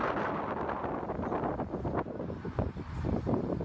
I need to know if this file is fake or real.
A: real